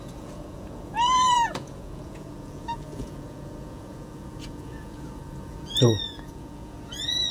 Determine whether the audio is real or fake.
fake